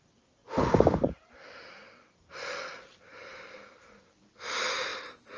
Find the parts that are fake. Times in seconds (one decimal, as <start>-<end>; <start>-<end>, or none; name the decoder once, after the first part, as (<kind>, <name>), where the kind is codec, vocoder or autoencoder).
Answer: none